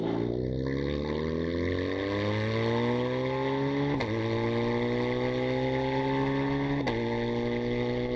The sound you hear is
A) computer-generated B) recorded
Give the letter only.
B